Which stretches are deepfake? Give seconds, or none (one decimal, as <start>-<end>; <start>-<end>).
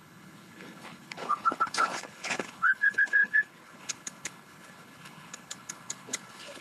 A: 0.0-6.6